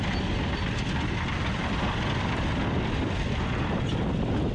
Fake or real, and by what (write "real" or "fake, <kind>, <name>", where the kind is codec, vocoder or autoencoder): real